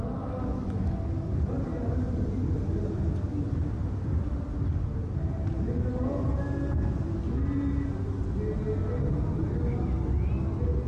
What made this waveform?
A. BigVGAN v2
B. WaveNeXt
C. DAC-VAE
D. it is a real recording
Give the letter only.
D